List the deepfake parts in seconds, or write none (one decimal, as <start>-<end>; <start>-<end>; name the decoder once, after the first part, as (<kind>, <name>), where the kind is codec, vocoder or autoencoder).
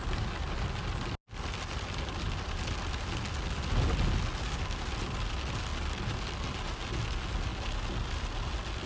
none